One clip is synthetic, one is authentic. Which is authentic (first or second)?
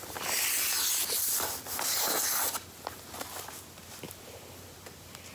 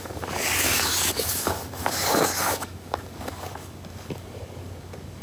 first